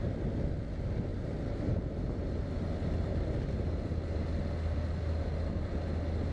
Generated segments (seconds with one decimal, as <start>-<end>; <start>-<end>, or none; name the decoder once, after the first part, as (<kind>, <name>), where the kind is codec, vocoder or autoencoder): 1.1-1.9 (vocoder, BigVGAN v2)